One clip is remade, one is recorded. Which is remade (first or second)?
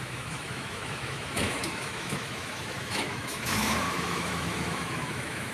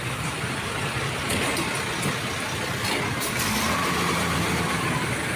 first